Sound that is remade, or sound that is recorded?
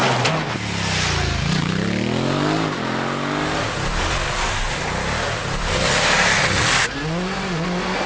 recorded